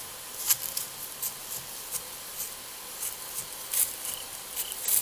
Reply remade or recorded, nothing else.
recorded